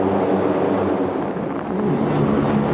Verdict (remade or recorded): recorded